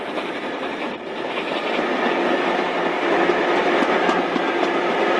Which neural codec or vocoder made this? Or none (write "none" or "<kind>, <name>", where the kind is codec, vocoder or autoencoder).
none